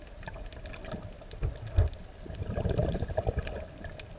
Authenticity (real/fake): real